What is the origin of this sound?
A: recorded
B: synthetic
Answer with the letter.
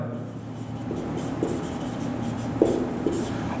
A